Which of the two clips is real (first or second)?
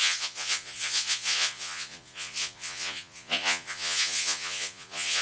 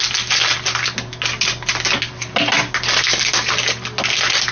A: second